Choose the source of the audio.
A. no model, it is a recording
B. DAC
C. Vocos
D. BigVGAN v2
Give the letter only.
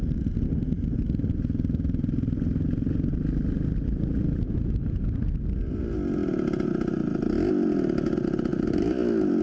A